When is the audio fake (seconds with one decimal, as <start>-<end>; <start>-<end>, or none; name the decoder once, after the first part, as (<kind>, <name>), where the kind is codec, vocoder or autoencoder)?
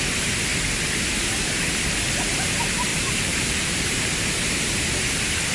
2.9-4.5 (vocoder, BigVGAN v2)